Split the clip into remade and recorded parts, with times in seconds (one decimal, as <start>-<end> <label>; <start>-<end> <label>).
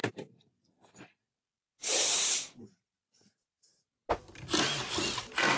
0.0-5.6 recorded